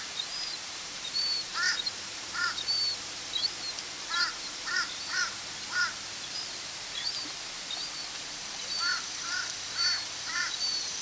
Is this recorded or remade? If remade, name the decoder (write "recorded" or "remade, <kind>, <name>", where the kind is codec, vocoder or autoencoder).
remade, vocoder, BigVGAN v2